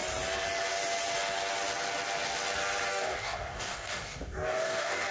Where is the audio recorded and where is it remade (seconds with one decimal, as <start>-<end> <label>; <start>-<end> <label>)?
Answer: 0.0-2.9 recorded; 2.9-5.1 remade

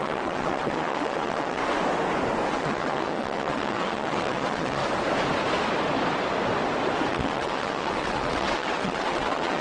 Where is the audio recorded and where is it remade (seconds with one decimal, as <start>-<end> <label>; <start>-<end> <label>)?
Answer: 0.0-1.6 remade; 1.6-2.5 recorded; 2.5-4.8 remade; 4.8-7.1 recorded; 7.1-9.6 remade

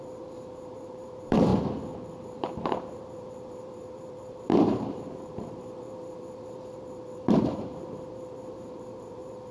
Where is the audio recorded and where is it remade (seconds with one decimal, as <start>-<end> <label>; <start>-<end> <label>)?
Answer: 0.0-1.5 remade; 1.5-2.2 recorded; 2.2-9.5 remade

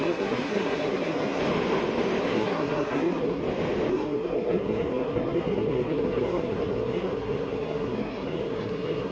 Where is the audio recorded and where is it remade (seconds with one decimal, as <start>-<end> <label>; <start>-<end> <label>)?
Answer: 0.0-1.4 remade; 1.4-2.2 recorded; 2.2-3.4 remade; 3.4-3.9 recorded; 3.9-9.1 remade

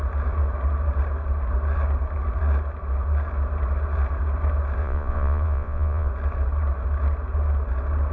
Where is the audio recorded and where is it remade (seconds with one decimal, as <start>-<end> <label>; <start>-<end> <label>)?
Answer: 0.0-4.8 recorded; 4.8-6.1 remade; 6.1-8.1 recorded

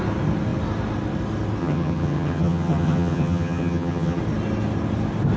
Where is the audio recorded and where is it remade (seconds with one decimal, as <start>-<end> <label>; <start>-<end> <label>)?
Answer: 0.0-1.6 recorded; 1.6-4.2 remade; 4.2-5.4 recorded